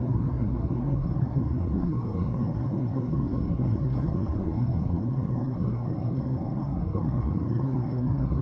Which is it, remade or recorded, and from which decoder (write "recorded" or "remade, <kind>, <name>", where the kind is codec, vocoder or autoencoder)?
remade, codec, SNAC